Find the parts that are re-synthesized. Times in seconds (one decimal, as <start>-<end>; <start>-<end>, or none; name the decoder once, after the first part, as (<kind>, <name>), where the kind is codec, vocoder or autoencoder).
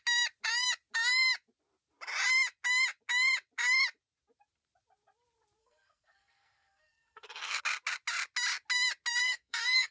5.6-7.6 (codec, SNAC); 9.2-9.9